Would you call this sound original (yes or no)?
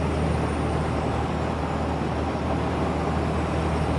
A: yes